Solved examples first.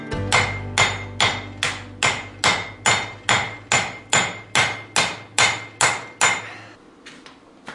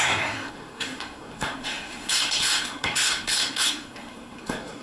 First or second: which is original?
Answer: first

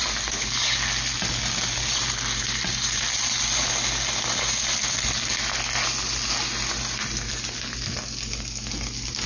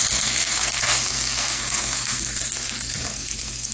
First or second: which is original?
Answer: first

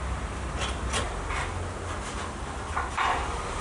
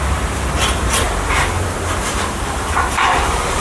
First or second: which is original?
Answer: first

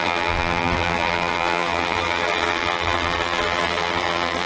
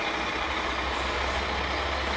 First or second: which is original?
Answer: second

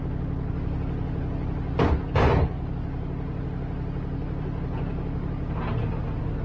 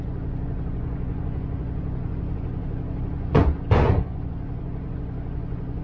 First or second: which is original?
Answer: first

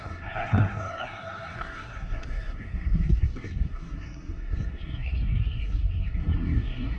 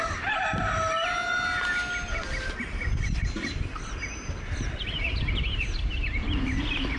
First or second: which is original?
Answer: second